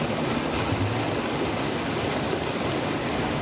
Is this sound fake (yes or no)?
no